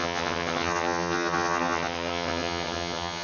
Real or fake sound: fake